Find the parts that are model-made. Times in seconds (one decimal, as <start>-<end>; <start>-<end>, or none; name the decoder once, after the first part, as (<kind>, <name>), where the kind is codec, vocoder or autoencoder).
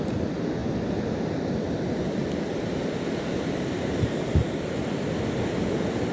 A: none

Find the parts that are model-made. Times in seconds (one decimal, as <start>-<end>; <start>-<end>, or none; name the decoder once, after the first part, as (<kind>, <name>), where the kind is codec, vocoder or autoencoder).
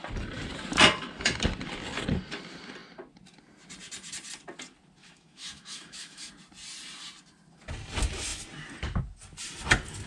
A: 5.0-6.3 (autoencoder, DAC-VAE)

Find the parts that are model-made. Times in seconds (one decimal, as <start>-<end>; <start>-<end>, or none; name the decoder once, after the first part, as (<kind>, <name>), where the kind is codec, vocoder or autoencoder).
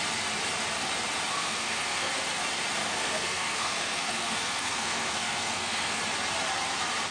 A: 1.3-2.1 (codec, SNAC); 2.8-6.0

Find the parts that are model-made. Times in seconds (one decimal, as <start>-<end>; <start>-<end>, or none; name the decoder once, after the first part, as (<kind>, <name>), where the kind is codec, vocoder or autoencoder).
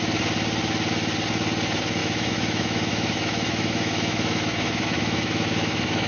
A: 2.0-6.1 (autoencoder, DAC-VAE)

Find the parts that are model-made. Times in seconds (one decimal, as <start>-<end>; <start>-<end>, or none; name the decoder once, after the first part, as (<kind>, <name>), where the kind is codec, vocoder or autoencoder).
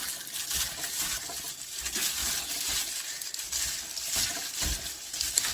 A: none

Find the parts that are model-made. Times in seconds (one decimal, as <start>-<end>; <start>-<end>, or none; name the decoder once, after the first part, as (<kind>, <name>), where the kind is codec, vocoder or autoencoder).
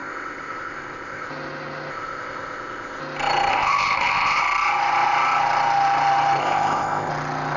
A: 0.0-1.3 (codec, ZipCodec); 1.9-3.0; 3.5-4.4; 6.4-7.1